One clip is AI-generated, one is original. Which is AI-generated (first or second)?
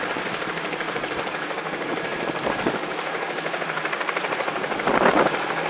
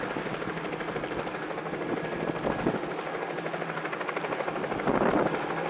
first